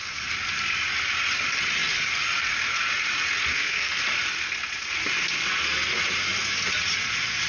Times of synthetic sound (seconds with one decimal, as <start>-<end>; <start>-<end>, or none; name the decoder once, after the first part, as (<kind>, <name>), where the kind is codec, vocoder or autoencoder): 3.5-4.0 (codec, SNAC)